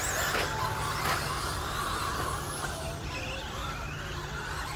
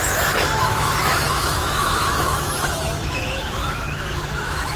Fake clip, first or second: second